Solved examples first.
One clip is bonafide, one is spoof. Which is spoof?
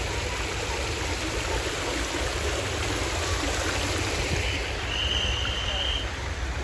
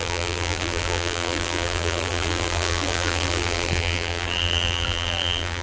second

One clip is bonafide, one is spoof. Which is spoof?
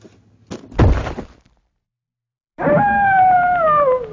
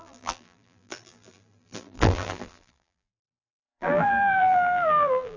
second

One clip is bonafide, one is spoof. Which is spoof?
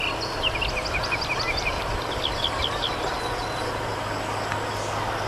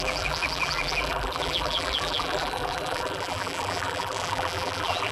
second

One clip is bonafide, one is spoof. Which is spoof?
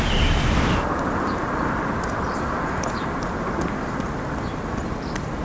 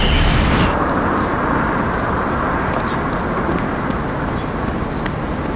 first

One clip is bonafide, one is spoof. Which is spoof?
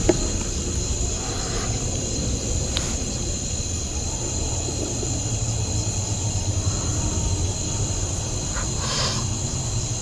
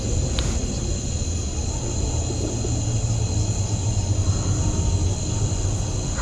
first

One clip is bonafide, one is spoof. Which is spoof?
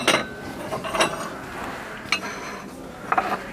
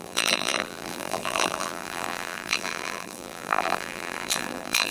second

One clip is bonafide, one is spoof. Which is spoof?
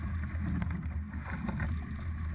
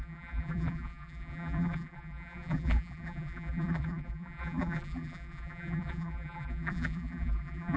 second